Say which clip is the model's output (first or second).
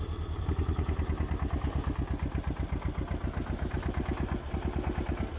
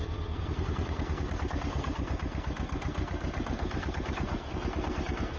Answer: second